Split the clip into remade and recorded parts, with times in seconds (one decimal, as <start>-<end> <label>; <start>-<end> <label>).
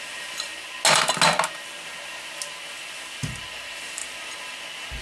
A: 0.0-0.5 remade; 0.5-3.5 recorded; 3.5-4.0 remade; 4.0-5.0 recorded